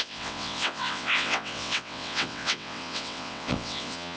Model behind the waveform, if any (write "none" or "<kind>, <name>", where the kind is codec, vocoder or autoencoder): vocoder, WaveNeXt